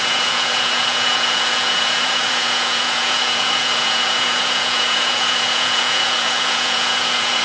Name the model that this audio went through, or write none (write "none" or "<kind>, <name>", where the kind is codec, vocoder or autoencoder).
vocoder, Vocos